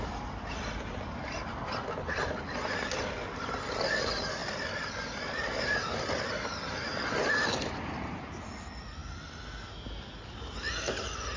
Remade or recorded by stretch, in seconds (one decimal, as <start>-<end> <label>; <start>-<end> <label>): 0.0-11.4 recorded